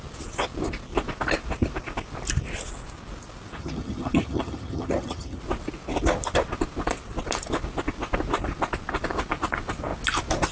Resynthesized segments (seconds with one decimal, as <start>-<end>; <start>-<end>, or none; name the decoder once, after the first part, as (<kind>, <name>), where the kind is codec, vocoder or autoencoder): 3.6-5.4 (vocoder, HiFi-GAN)